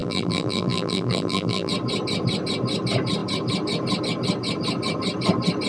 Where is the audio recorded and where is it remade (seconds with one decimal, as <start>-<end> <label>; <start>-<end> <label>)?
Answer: 0.0-1.7 remade; 1.7-5.7 recorded